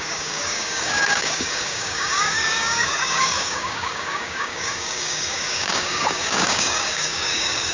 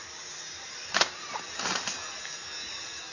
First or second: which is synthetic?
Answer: first